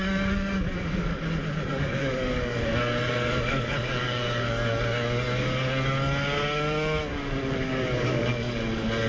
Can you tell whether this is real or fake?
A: fake